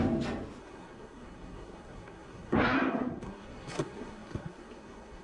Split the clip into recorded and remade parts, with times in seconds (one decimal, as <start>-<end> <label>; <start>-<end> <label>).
0.0-0.6 recorded; 0.6-5.2 remade